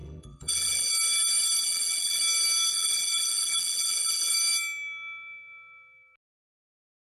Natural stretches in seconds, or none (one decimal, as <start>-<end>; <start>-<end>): 0.9-1.6; 2.2-2.7; 4.3-7.0